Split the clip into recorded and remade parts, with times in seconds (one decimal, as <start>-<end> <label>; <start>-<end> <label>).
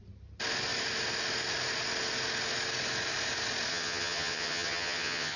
0.0-3.7 recorded; 3.7-5.4 remade